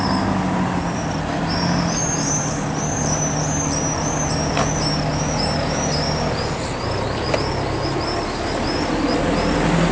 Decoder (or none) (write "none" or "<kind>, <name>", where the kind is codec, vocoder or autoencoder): none